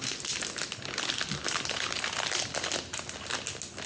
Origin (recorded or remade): recorded